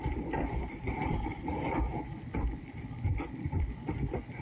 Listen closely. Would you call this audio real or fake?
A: fake